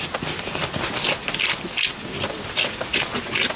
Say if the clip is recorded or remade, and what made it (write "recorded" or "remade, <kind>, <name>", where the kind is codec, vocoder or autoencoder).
recorded